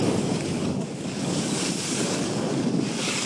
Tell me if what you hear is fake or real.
fake